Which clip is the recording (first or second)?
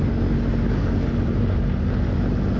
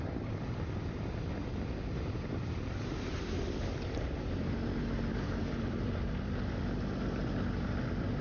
first